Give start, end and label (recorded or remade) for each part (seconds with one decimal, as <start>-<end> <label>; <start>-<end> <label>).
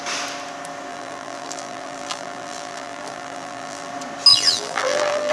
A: 0.0-0.9 recorded; 0.9-3.9 remade; 3.9-4.3 recorded; 4.3-5.3 remade